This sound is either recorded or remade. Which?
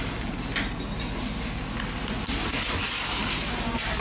recorded